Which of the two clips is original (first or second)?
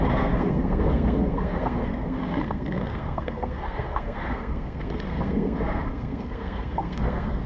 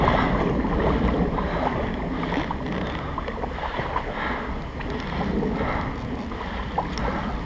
second